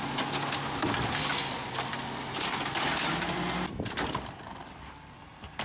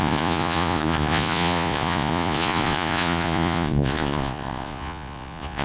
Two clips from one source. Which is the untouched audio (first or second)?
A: first